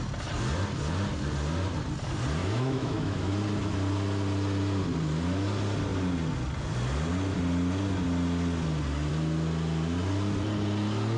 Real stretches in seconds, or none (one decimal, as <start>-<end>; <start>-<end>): 0.0-2.4; 3.3-11.2